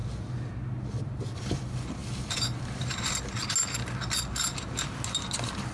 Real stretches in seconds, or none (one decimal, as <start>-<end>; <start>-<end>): 0.0-5.7

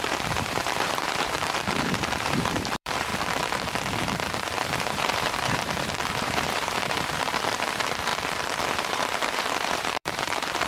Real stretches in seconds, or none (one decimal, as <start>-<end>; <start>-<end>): 3.1-4.4; 8.1-8.7

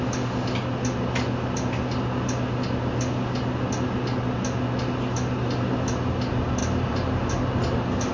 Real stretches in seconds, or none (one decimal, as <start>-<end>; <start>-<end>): 0.0-6.6; 7.3-8.1

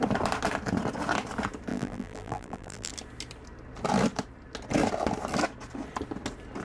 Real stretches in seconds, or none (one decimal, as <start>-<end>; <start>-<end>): 0.0-1.7; 2.9-6.6

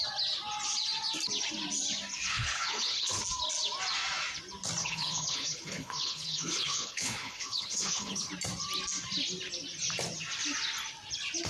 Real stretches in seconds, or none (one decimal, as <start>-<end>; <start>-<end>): 0.0-2.3; 3.2-4.8; 8.3-11.5